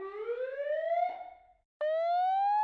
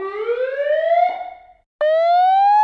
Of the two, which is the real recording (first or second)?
second